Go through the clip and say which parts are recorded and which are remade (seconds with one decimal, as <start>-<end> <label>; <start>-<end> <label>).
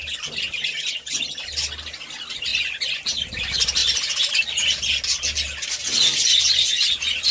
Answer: 0.0-2.5 recorded; 2.5-3.2 remade; 3.2-3.8 recorded; 3.8-4.3 remade; 4.3-7.3 recorded